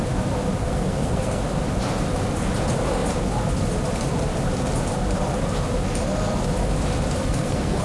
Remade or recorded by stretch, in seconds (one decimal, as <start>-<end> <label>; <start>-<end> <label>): 0.0-0.6 recorded; 0.6-1.4 remade; 1.4-7.2 recorded; 7.2-7.8 remade